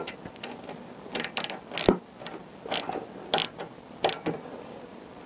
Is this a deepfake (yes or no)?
no